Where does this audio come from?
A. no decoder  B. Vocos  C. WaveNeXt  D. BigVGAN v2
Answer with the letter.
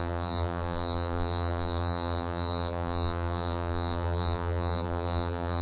D